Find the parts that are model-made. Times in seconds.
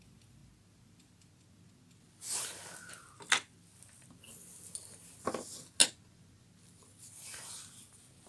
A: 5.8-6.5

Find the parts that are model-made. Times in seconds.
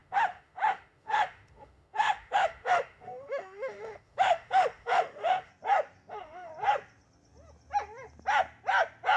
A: 0.0-5.5; 6.1-6.5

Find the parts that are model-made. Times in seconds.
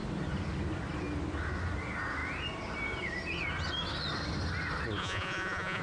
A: 5.0-5.8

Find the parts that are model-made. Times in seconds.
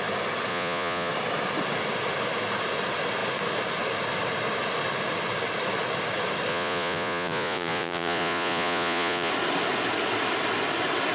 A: 0.5-1.1; 6.5-9.3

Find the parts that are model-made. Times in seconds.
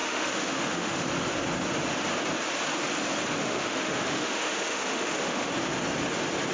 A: 0.0-1.1; 3.4-5.5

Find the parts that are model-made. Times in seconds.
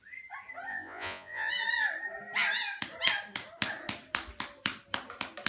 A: 0.7-1.5